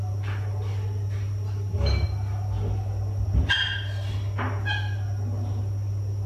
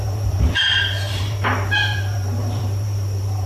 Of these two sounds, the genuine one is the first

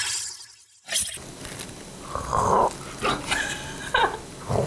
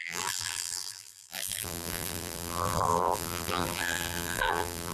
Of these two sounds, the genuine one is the first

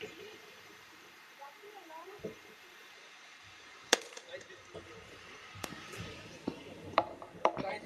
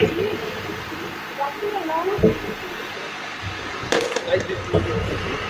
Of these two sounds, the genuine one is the second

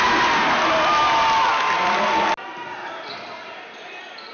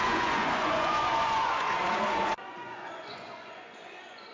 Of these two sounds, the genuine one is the first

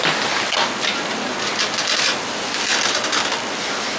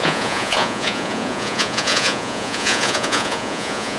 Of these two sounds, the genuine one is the first